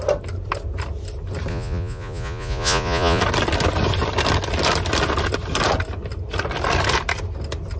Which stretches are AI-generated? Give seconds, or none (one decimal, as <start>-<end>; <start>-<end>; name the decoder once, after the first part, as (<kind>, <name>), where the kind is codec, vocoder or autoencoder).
1.5-3.2 (vocoder, Vocos)